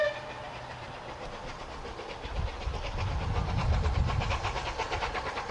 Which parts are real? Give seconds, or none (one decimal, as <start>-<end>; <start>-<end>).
0.0-5.5

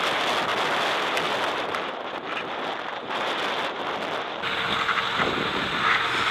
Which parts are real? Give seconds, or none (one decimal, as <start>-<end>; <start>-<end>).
0.0-6.3